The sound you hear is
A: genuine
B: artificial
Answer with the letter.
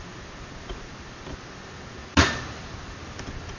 A